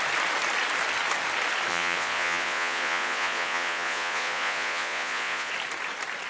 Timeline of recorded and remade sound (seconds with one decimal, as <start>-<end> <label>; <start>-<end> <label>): 0.0-1.7 recorded; 1.7-5.5 remade; 5.5-6.3 recorded